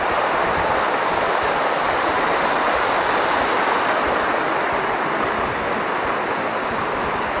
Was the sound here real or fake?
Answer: real